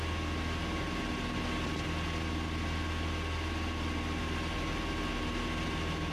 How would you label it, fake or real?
real